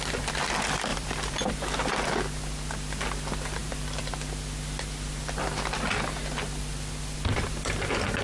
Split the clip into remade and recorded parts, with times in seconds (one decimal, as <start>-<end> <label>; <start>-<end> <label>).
0.0-0.9 recorded; 0.9-2.1 remade; 2.1-3.6 recorded; 3.6-4.1 remade; 4.1-8.2 recorded